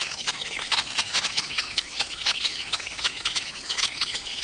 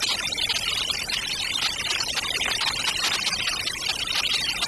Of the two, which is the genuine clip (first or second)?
second